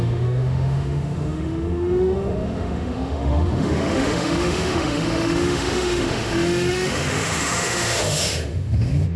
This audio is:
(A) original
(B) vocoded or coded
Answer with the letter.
B